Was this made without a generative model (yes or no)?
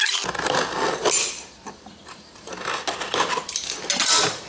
yes